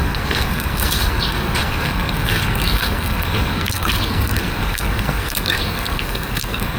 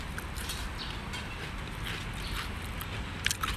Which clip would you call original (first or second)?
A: second